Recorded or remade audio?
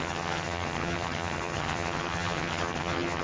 remade